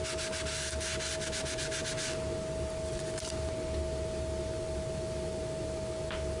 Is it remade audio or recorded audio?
recorded